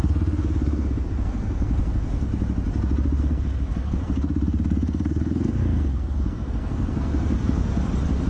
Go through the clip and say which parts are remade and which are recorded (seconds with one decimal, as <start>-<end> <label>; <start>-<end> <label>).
0.0-2.3 remade; 2.3-3.2 recorded; 3.2-7.7 remade; 7.7-8.3 recorded